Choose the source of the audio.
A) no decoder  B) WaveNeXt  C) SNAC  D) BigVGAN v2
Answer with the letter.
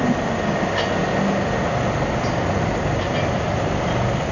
A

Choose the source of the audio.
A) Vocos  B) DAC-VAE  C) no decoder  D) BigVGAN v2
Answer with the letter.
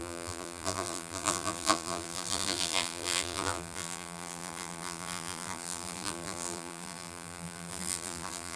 D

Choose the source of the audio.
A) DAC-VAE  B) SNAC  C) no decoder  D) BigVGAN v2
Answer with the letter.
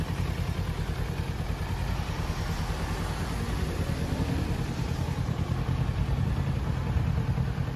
C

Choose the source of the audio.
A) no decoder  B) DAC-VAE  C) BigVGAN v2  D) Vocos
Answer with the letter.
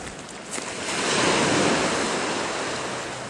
A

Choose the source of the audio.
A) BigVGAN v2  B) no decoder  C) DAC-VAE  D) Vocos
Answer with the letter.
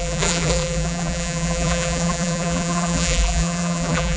A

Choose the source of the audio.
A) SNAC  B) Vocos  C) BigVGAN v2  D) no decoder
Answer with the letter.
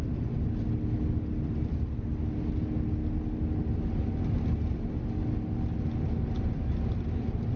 D